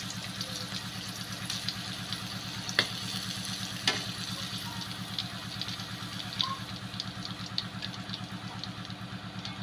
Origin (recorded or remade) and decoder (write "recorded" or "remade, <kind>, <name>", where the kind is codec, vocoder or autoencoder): recorded